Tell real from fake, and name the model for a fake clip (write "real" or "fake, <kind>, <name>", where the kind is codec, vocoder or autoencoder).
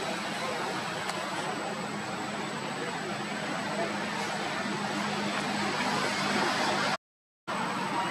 real